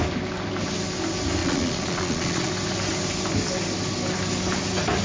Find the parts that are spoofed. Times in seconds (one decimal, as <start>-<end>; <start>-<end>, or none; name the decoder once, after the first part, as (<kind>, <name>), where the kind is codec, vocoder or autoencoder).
1.4-2.5 (vocoder, Vocos)